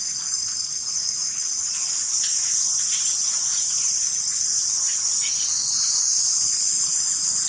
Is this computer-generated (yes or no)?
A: yes